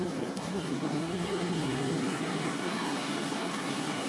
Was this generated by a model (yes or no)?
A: yes